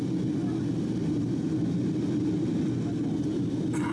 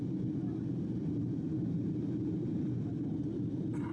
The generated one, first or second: second